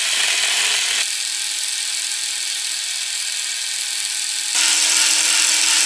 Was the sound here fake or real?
real